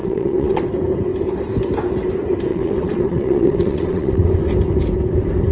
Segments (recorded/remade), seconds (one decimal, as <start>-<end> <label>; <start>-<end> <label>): 0.0-0.6 remade; 0.6-2.5 recorded; 2.5-4.4 remade; 4.4-5.5 recorded